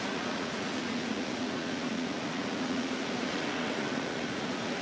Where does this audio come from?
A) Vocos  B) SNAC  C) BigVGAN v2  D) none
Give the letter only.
A